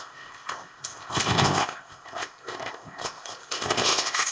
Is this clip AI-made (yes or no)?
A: yes